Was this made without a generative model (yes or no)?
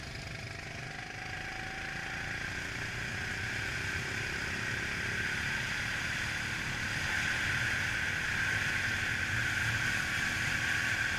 yes